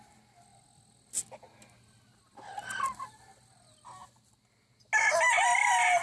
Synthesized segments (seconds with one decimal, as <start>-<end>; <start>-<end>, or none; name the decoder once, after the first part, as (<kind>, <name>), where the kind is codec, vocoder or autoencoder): none